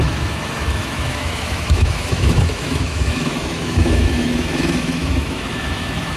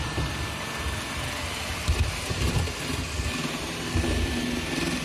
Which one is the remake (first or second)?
first